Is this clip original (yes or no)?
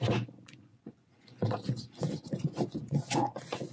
no